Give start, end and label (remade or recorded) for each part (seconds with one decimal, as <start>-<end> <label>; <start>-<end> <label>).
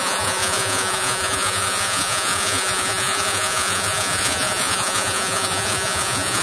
0.0-6.4 remade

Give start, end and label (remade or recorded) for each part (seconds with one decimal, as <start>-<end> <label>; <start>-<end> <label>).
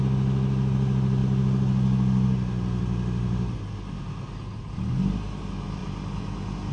0.0-6.7 recorded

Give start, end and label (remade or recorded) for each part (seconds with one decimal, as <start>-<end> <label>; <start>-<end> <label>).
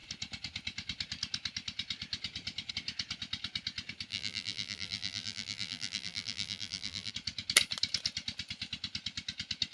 0.0-4.1 recorded; 4.1-7.1 remade; 7.1-9.7 recorded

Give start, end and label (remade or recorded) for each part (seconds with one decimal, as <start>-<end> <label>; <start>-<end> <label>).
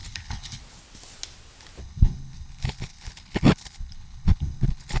0.0-0.6 remade; 0.6-1.8 recorded; 1.8-5.0 remade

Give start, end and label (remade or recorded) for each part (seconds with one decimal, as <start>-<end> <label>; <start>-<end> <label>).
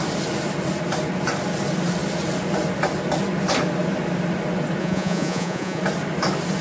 0.0-4.8 recorded; 4.8-5.8 remade; 5.8-6.6 recorded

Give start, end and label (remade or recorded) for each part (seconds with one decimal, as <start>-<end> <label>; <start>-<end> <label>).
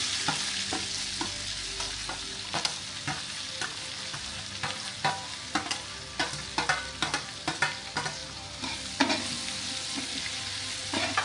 0.0-11.2 recorded